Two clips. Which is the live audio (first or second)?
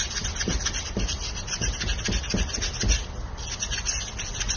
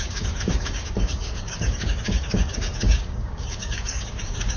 first